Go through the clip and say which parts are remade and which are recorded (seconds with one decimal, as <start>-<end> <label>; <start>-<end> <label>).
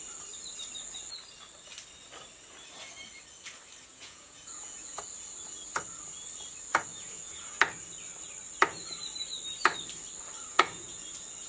0.0-3.9 recorded; 3.9-5.0 remade; 5.0-6.9 recorded; 6.9-7.6 remade; 7.6-10.5 recorded; 10.5-11.1 remade; 11.1-11.5 recorded